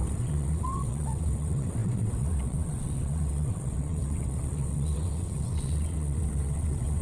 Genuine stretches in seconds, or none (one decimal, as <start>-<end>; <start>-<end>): none